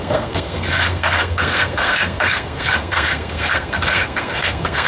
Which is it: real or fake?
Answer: fake